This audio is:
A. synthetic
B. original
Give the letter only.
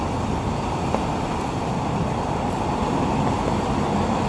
B